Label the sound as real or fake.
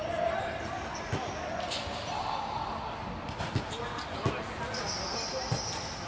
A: real